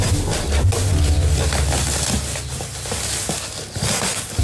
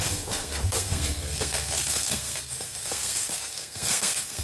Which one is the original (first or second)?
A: first